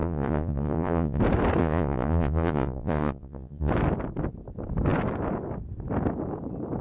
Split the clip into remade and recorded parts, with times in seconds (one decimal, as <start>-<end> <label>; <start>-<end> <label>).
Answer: 0.0-1.2 remade; 1.2-1.6 recorded; 1.6-3.7 remade; 3.7-6.8 recorded